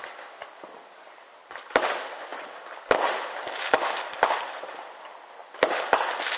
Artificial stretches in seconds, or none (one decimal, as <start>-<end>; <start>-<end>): 0.0-0.4; 1.8-6.4